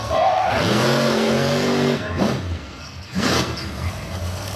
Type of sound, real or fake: fake